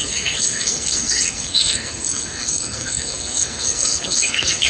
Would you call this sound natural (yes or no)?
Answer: no